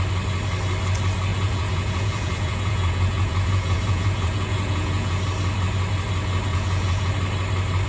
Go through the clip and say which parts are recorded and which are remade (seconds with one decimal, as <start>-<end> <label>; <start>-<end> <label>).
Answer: 0.0-1.3 recorded; 1.3-5.2 remade; 5.2-6.5 recorded; 6.5-7.1 remade; 7.1-7.9 recorded